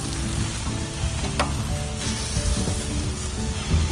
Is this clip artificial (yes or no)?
no